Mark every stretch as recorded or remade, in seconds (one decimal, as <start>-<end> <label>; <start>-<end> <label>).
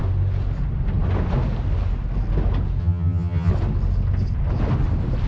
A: 0.0-2.8 recorded; 2.8-3.5 remade; 3.5-5.3 recorded